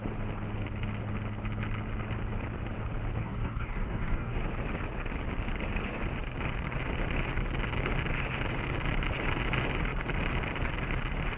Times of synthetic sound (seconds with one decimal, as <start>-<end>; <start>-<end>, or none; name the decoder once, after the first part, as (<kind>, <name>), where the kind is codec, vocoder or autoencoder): 3.2-4.4 (codec, DAC)